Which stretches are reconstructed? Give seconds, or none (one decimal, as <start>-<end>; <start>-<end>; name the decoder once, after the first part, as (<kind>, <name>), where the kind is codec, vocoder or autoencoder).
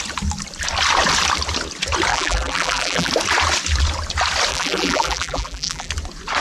2.1-3.1 (vocoder, BigVGAN v2); 4.5-5.9